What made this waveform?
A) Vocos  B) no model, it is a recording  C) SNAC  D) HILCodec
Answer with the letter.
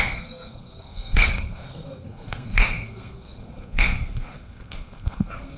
C